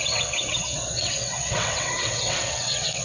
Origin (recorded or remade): remade